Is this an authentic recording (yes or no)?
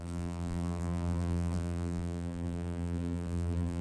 no